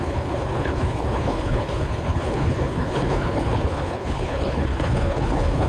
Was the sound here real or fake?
fake